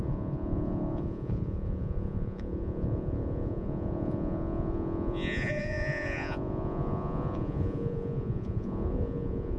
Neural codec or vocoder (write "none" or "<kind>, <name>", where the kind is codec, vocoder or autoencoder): vocoder, Vocos